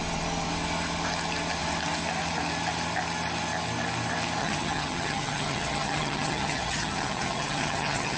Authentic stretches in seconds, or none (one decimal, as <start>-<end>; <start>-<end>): 0.0-4.4